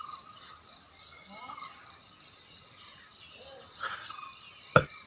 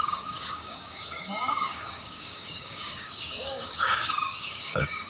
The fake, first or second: second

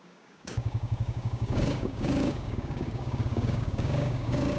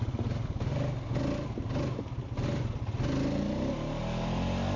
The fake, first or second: first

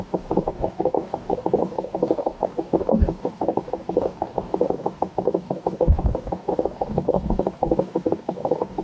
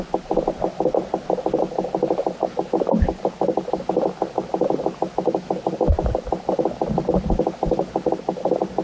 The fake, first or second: first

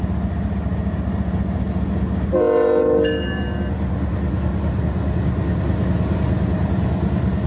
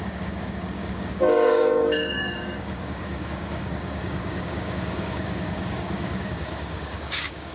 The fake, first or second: second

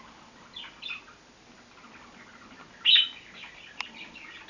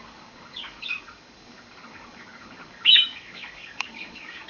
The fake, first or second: second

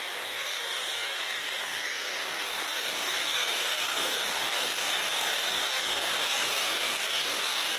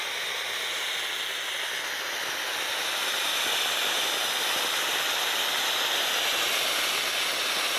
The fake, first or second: first